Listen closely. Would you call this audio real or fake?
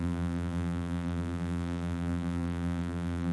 fake